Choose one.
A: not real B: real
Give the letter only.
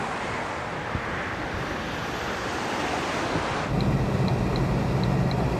B